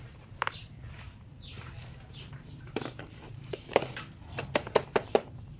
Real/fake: fake